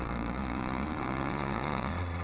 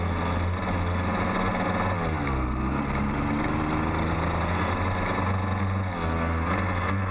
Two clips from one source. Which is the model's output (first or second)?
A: first